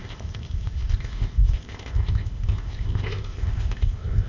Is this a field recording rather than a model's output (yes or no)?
no